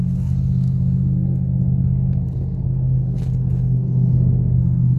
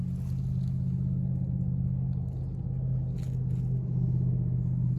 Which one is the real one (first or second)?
second